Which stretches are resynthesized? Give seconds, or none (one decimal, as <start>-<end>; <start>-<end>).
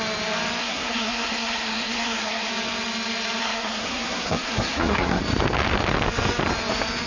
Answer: 0.6-2.5; 3.4-5.2